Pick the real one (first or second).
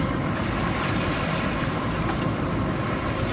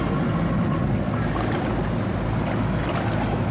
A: second